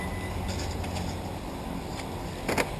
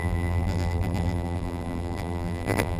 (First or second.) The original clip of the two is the first